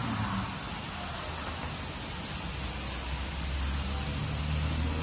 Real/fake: real